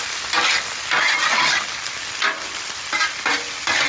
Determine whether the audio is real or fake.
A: real